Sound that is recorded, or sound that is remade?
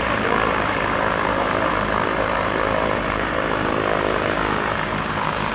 remade